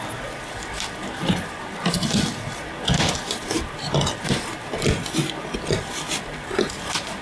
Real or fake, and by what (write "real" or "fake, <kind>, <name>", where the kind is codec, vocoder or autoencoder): fake, vocoder, BigVGAN v2